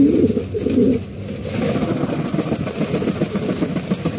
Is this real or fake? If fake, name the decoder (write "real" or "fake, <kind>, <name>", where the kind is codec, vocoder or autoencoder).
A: real